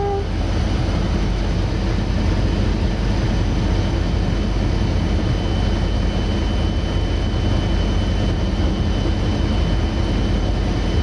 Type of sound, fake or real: real